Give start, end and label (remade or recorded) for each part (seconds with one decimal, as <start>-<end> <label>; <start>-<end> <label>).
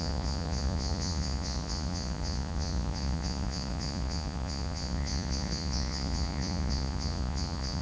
0.0-7.8 remade